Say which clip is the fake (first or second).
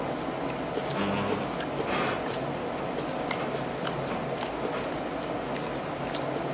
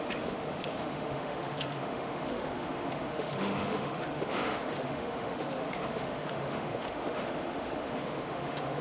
second